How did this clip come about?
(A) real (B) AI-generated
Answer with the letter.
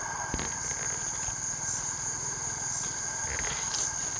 A